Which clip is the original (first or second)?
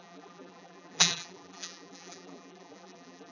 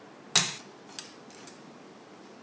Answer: second